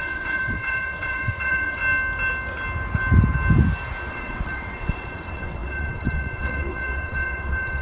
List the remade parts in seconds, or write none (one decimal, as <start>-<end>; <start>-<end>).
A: 0.0-1.8; 4.1-7.8